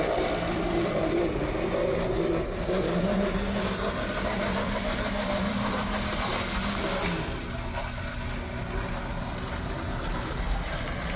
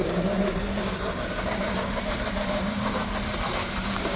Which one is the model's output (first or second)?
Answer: second